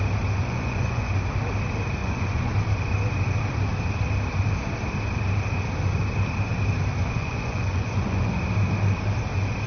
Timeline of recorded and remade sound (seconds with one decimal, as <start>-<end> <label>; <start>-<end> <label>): 0.0-0.4 recorded; 0.4-1.1 remade; 1.1-2.0 recorded; 2.0-2.5 remade; 2.5-7.0 recorded; 7.0-8.4 remade; 8.4-9.7 recorded